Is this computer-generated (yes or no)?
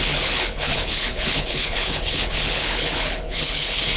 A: yes